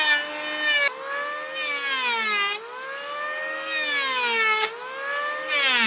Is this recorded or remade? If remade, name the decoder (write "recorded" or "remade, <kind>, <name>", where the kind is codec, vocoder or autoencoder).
recorded